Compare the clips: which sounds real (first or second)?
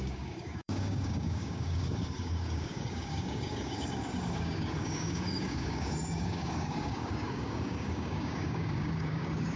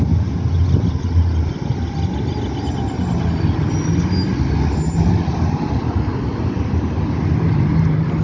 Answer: second